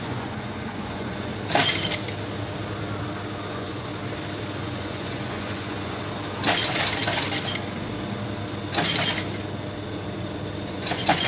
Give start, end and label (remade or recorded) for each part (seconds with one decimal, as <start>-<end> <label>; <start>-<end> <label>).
0.0-1.3 remade; 1.3-3.5 recorded; 3.5-3.9 remade; 3.9-4.6 recorded; 4.6-6.0 remade; 6.0-10.7 recorded; 10.7-11.3 remade